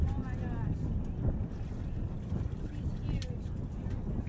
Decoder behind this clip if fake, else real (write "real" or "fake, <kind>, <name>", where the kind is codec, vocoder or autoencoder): real